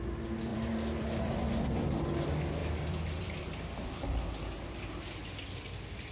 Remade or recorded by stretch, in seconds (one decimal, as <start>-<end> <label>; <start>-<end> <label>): 0.0-0.5 recorded; 0.5-1.9 remade; 1.9-2.6 recorded; 2.6-4.8 remade; 4.8-6.1 recorded